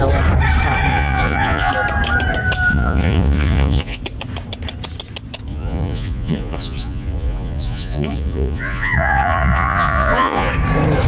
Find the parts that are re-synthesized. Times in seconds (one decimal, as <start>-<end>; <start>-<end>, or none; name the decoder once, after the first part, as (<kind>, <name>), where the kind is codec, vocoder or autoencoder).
0.9-1.7 (vocoder, Vocos); 2.7-4.0; 5.5-10.5